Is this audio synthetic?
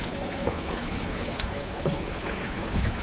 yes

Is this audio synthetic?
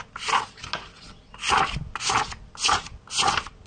no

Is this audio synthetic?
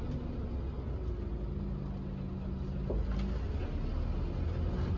no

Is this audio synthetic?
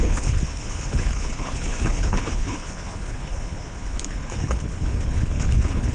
yes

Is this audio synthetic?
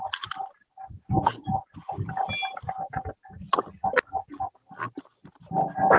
no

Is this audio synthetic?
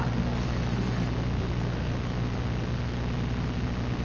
no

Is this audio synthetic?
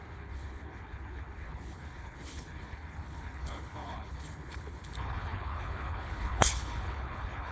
yes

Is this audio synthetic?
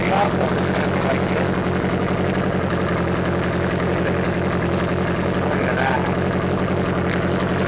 no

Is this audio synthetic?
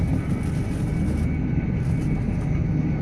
no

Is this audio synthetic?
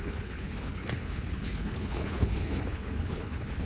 yes